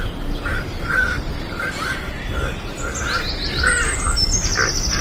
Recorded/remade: recorded